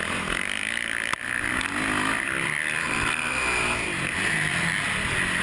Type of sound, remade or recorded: recorded